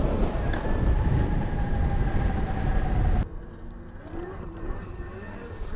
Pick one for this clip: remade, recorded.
recorded